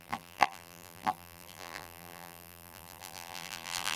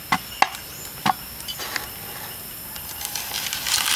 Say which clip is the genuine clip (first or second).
second